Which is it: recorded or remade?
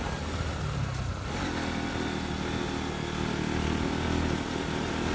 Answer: recorded